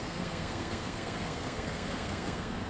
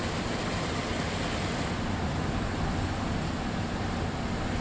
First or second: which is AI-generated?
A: first